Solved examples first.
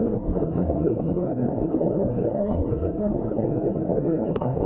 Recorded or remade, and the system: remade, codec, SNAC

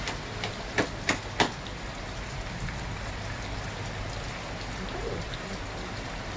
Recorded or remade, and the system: recorded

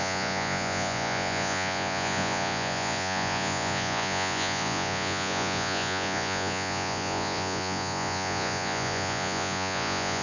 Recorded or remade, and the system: remade, vocoder, Vocos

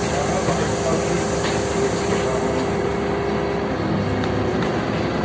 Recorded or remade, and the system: recorded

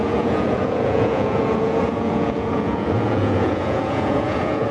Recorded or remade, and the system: remade, vocoder, Vocos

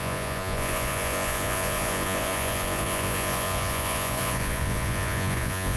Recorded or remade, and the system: remade, vocoder, Vocos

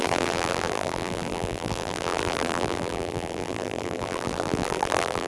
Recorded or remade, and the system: remade, vocoder, BigVGAN v2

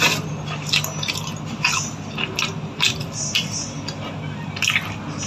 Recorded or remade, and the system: recorded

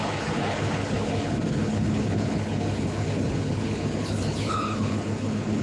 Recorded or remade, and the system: remade, codec, HILCodec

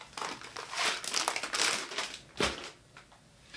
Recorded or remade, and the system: recorded